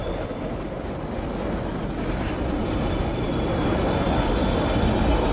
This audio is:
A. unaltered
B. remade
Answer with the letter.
A